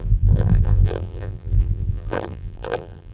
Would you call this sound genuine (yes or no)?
no